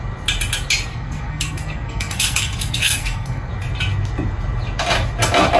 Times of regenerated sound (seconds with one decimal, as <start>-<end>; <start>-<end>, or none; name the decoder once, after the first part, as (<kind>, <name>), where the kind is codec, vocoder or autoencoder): 0.9-3.5 (codec, SNAC)